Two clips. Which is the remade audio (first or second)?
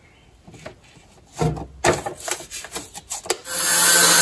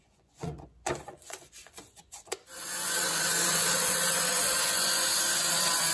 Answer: second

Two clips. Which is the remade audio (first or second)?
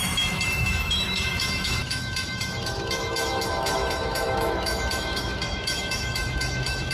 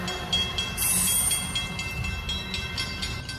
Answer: first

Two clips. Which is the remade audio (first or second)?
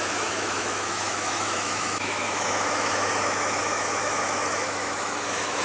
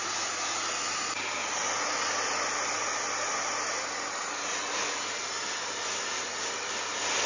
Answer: first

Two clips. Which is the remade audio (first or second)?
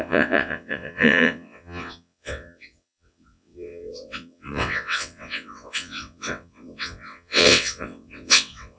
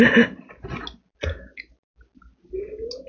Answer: first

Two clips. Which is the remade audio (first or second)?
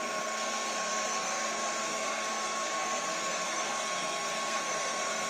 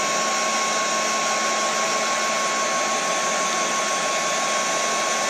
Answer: first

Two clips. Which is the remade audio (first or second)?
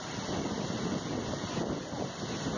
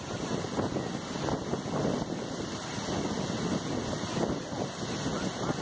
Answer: first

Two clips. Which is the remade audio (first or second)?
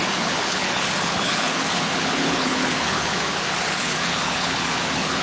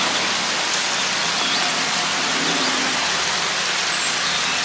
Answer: first